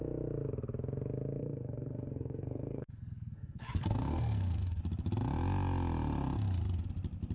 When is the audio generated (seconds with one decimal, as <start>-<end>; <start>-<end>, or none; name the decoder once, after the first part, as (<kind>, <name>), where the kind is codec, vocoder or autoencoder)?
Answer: 1.4-4.8 (codec, SNAC)